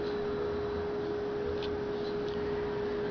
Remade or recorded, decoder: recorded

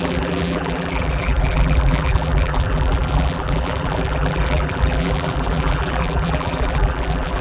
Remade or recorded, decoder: remade, vocoder, BigVGAN v2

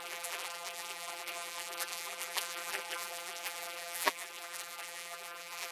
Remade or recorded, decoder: remade, vocoder, BigVGAN v2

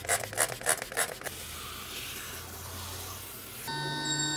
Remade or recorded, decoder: recorded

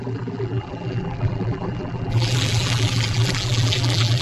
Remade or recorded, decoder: remade, vocoder, BigVGAN v2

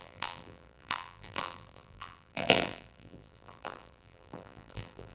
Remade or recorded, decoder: remade, vocoder, BigVGAN v2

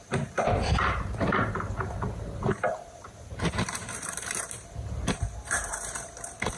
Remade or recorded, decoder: remade, vocoder, BigVGAN v2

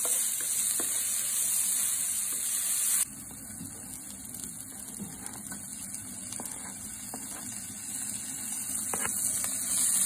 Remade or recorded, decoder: recorded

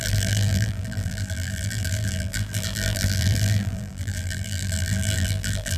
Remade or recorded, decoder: remade, vocoder, BigVGAN v2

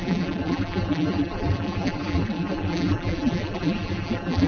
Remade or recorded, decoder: remade, vocoder, BigVGAN v2